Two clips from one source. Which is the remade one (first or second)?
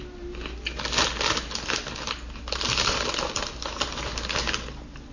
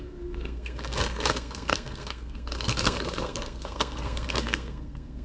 second